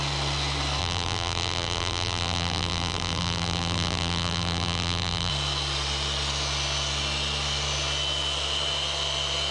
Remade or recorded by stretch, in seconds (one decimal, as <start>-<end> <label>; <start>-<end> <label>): 0.0-0.8 recorded; 0.8-5.3 remade; 5.3-9.5 recorded